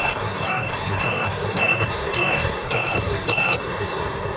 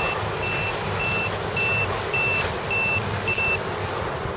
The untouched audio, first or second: second